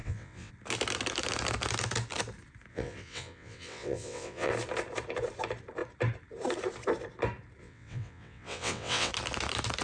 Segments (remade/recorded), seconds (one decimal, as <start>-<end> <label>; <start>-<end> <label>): 0.0-0.5 remade; 0.5-2.7 recorded; 2.7-4.5 remade; 4.5-7.6 recorded; 7.6-9.1 remade; 9.1-9.8 recorded